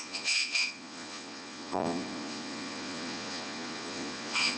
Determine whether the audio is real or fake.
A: fake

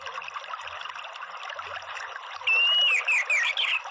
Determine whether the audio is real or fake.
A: real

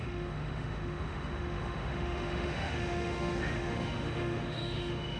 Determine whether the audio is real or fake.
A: fake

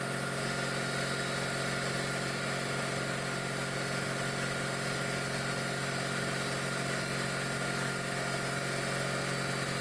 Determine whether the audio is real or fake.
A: real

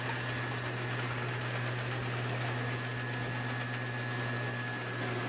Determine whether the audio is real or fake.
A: real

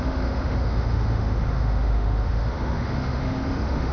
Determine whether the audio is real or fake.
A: fake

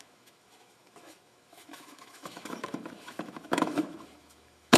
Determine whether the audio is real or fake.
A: fake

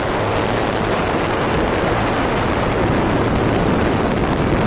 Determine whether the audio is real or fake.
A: real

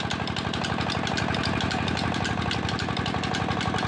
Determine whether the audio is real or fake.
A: real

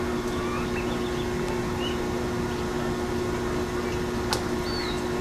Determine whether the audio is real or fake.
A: real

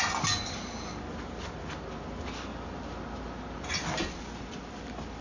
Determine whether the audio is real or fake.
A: real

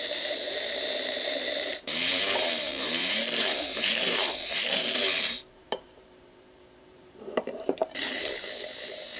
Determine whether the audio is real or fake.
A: fake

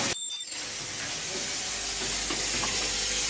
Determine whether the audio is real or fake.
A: real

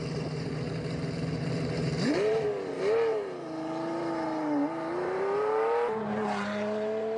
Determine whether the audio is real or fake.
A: fake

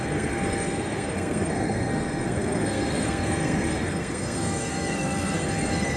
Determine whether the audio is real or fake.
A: fake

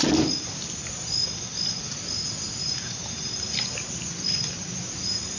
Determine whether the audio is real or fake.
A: real